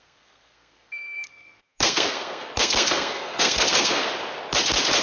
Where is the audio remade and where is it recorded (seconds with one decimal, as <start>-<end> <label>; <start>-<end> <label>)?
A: 0.0-4.1 remade; 4.1-5.0 recorded